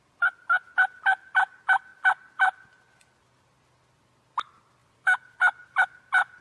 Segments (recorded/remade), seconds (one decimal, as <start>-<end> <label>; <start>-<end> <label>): 0.0-4.8 recorded; 4.8-5.8 remade; 5.8-6.4 recorded